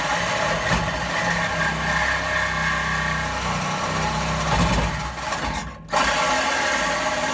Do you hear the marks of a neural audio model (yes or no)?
no